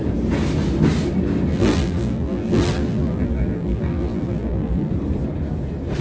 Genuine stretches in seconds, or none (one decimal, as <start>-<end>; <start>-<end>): 0.0-1.5; 4.9-6.0